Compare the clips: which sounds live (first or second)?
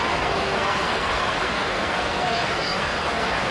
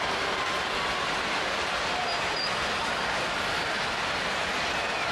second